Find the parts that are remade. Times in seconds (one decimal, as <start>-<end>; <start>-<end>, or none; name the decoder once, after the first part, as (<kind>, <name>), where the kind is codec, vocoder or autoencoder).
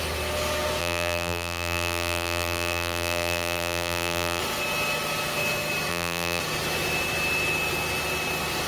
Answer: 0.8-4.4 (vocoder, BigVGAN v2); 5.9-6.4